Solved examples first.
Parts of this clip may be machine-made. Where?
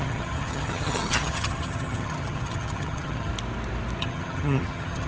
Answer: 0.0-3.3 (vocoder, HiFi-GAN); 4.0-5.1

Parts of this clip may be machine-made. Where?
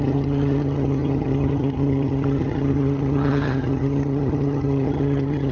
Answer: 0.0-5.5 (vocoder, HiFi-GAN)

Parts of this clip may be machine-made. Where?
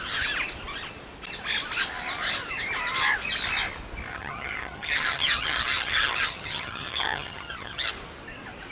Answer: 4.1-7.9 (vocoder, HiFi-GAN)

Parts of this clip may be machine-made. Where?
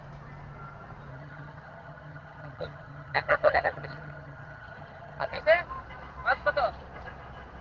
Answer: 1.1-5.4 (vocoder, HiFi-GAN)